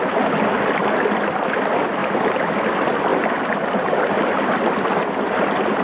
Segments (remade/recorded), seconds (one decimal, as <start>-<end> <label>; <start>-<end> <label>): 0.0-5.8 recorded

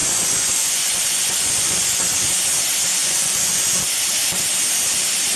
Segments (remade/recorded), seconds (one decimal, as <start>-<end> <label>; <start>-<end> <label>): 0.0-2.2 remade; 2.2-3.0 recorded; 3.0-3.7 remade; 3.7-5.4 recorded

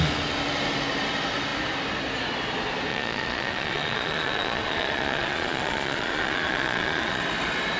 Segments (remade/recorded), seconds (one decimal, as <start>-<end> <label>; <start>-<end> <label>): 0.0-2.9 recorded; 2.9-7.2 remade; 7.2-7.8 recorded

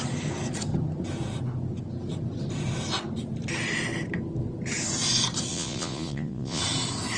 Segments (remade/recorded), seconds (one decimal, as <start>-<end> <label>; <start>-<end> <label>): 0.0-5.5 recorded; 5.5-6.6 remade; 6.6-7.2 recorded